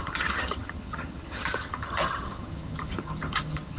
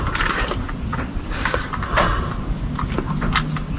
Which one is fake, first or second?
first